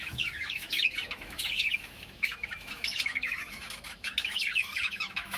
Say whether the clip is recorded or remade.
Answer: remade